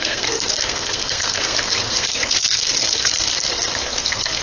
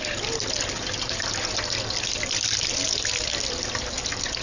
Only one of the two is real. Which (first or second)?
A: second